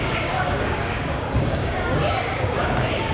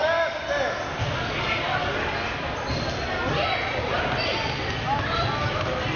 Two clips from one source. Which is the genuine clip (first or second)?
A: second